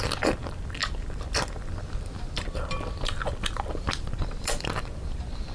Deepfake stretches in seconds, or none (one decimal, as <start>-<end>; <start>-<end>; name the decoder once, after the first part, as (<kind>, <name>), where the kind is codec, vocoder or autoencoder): 0.0-5.5 (vocoder, BigVGAN v2)